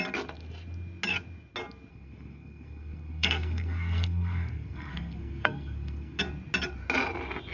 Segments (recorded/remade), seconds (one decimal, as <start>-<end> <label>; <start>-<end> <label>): 0.0-1.9 recorded; 1.9-6.2 remade; 6.2-7.5 recorded